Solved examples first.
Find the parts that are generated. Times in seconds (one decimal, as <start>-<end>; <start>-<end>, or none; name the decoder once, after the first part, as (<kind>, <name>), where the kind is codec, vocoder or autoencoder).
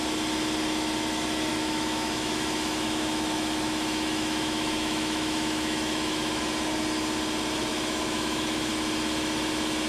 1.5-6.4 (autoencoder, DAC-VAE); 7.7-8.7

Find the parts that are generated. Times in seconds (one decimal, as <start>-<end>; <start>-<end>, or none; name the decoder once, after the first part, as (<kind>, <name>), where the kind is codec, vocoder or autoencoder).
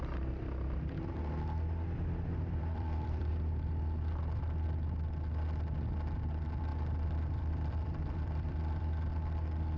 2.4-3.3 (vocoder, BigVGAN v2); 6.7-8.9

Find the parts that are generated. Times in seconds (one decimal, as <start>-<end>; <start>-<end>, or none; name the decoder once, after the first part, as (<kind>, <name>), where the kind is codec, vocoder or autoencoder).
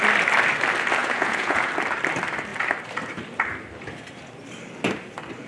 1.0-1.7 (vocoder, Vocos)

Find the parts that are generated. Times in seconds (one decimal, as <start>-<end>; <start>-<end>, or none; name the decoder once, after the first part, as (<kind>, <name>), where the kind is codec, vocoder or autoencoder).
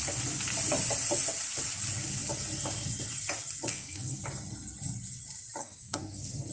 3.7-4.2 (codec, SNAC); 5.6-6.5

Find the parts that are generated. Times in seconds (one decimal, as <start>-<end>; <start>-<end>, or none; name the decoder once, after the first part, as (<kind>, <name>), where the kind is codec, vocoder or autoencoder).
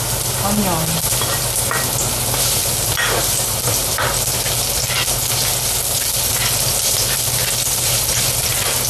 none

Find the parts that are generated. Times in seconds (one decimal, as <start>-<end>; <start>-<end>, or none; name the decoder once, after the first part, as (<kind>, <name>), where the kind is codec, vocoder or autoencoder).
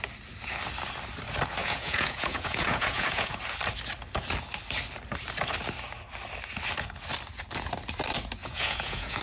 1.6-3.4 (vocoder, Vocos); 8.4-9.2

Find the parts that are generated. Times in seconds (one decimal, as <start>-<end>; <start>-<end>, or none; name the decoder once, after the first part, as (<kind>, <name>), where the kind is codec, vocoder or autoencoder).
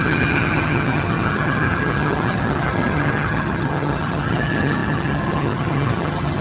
0.0-6.4 (vocoder, HiFi-GAN)